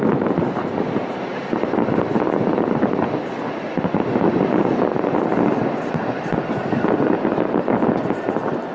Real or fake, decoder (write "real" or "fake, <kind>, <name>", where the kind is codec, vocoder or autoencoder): fake, vocoder, BigVGAN v2